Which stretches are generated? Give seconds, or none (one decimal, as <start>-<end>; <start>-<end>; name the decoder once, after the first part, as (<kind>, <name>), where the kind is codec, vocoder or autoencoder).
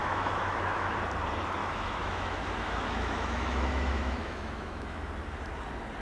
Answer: 0.0-0.9 (autoencoder, DAC-VAE); 1.6-5.1